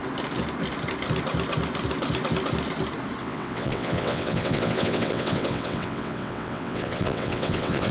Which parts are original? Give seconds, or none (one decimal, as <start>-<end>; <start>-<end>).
0.0-3.2